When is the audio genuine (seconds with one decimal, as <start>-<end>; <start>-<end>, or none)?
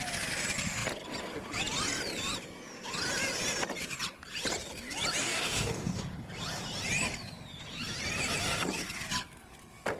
0.0-5.2; 6.0-10.0